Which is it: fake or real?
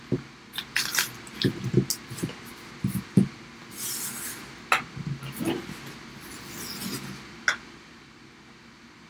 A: real